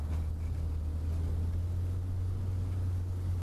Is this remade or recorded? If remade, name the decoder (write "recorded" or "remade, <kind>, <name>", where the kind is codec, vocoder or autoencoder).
recorded